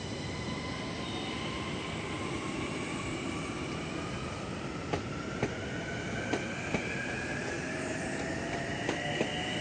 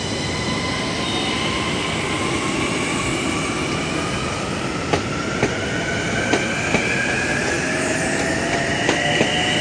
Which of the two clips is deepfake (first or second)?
first